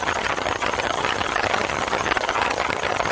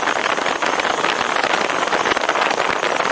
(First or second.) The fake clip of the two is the first